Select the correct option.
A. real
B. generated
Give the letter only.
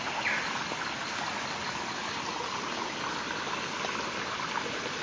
A